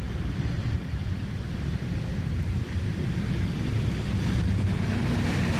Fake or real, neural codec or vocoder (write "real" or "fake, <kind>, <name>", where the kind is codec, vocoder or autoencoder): real